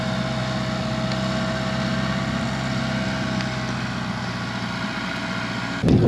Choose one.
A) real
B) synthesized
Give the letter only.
A